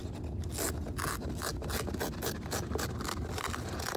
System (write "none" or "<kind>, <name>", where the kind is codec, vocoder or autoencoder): none